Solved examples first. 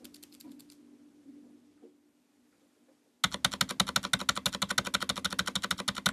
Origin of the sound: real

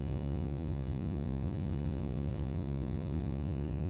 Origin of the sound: fake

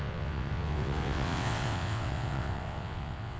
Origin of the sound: fake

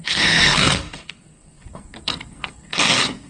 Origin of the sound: fake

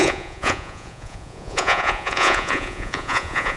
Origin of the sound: fake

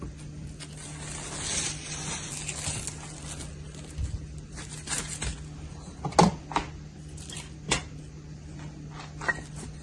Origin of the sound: real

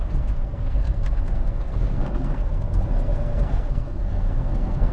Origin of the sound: fake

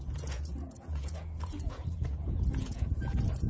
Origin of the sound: fake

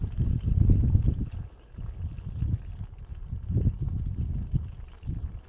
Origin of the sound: real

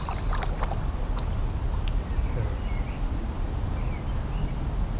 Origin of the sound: real